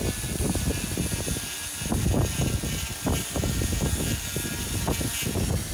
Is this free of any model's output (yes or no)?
yes